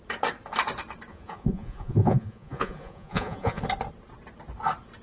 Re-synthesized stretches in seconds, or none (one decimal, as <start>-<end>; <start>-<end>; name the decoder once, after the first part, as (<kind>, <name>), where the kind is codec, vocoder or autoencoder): 1.1-3.6 (vocoder, Vocos)